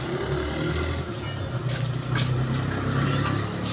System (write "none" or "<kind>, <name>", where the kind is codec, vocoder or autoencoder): none